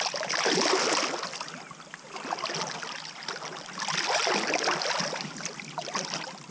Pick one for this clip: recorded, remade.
recorded